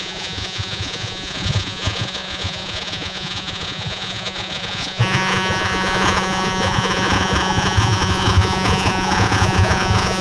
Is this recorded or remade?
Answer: remade